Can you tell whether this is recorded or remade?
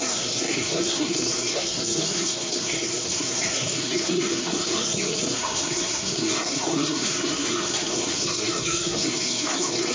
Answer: remade